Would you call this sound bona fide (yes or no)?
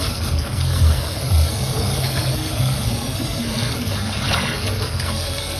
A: no